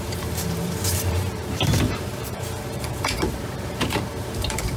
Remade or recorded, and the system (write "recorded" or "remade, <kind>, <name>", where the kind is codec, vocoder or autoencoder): remade, vocoder, BigVGAN v2